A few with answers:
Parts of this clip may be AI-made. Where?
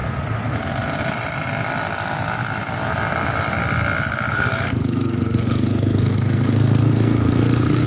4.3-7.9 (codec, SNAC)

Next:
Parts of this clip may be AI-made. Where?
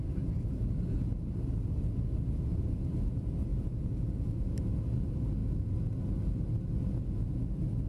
3.5-4.5 (vocoder, Vocos)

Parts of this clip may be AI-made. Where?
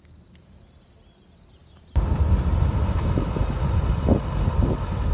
none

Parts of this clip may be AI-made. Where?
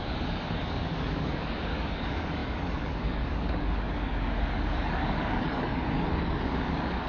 0.0-7.1 (codec, DAC)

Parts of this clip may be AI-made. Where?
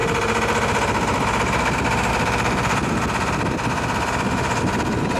none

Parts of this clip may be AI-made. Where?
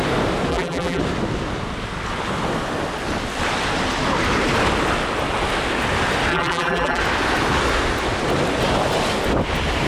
0.5-1.0 (vocoder, BigVGAN v2); 6.3-7.0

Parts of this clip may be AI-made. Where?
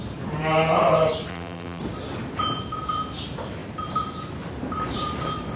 1.3-1.8 (vocoder, BigVGAN v2)